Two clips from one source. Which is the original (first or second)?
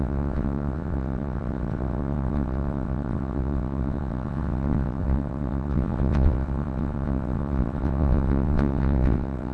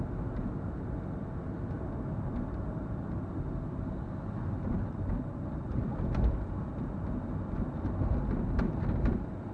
second